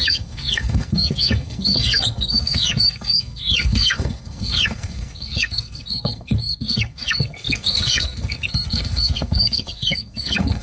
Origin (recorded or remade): remade